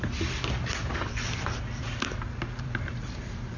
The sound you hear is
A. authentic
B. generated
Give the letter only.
B